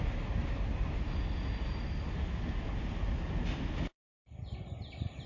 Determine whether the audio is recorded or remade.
recorded